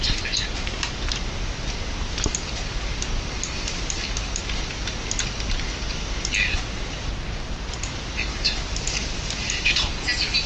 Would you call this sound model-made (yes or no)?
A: no